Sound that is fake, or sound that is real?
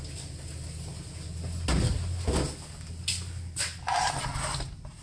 real